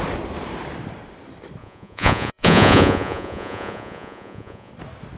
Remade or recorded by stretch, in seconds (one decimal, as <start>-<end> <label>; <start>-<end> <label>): 0.0-1.6 recorded; 1.6-4.7 remade; 4.7-5.2 recorded

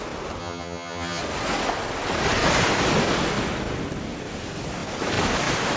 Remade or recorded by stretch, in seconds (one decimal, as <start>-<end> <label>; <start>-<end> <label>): 0.0-0.4 recorded; 0.4-1.2 remade; 1.2-5.8 recorded

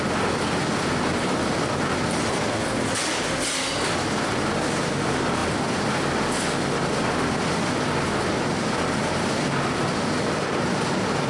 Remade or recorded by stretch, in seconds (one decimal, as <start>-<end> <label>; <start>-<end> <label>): 0.0-11.3 remade

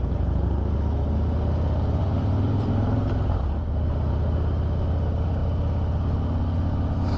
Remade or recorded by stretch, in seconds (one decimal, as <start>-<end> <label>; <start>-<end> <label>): 0.0-2.0 recorded; 2.0-3.4 remade; 3.4-7.2 recorded

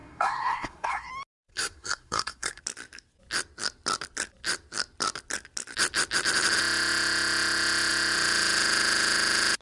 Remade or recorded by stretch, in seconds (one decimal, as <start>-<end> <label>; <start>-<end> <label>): 0.0-1.1 remade; 1.1-1.5 recorded; 1.5-2.6 remade; 2.6-9.6 recorded